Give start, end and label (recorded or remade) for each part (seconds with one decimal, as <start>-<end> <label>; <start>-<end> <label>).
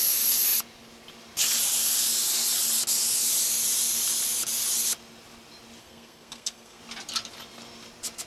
0.0-5.8 recorded; 5.8-6.8 remade; 6.8-8.3 recorded